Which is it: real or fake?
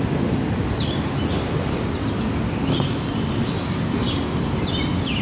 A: real